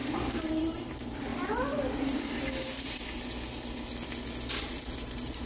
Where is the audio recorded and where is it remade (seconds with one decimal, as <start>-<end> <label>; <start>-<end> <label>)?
0.0-1.3 remade; 1.3-4.6 recorded; 4.6-5.5 remade